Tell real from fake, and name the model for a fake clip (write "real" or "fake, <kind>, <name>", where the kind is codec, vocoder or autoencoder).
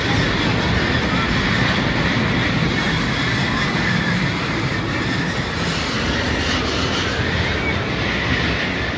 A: real